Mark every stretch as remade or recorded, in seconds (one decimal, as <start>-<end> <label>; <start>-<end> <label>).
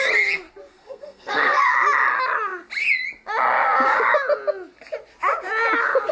0.0-0.7 recorded; 0.7-1.7 remade; 1.7-6.1 recorded